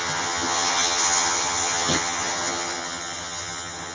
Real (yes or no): no